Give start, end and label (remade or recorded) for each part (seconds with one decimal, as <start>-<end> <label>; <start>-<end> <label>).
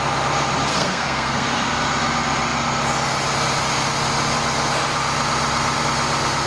0.0-0.7 recorded; 0.7-1.7 remade; 1.7-6.5 recorded